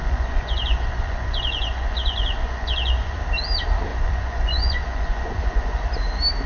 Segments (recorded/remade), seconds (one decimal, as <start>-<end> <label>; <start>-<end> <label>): 0.0-3.2 remade; 3.2-3.9 recorded; 3.9-5.8 remade; 5.8-6.5 recorded